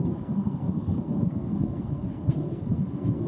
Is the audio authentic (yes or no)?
no